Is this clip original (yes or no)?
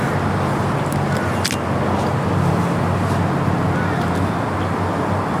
yes